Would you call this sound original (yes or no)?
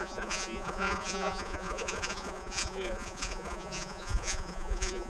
no